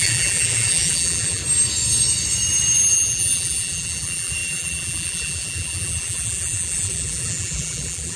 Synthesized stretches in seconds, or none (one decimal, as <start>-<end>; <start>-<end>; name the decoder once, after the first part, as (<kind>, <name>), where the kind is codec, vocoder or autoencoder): 0.0-1.4 (vocoder, BigVGAN v2); 2.9-8.2